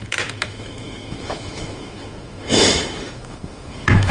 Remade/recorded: remade